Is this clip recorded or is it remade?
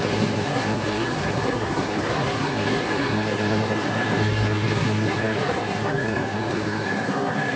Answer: remade